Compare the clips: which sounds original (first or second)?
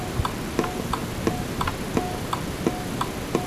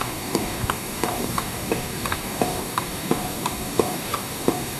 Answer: first